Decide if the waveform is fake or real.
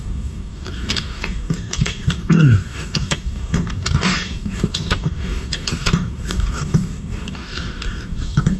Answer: fake